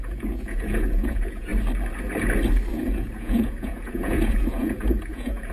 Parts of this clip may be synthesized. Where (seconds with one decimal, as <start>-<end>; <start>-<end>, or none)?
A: 0.0-1.5; 2.7-5.5